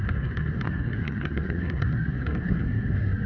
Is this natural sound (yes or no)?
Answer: no